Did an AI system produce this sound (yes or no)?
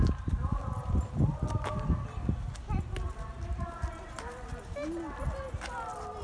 no